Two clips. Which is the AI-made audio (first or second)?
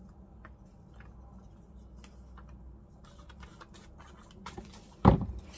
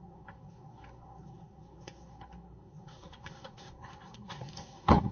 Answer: second